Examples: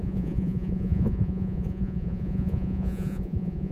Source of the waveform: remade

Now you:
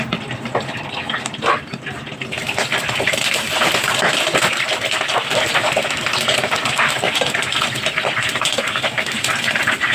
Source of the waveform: recorded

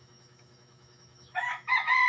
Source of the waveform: remade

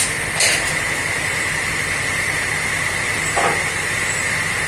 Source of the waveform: recorded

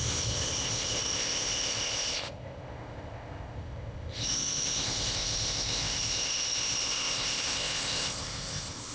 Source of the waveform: remade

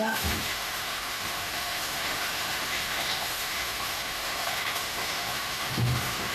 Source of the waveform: remade